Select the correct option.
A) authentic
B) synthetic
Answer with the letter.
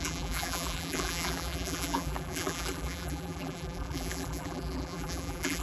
B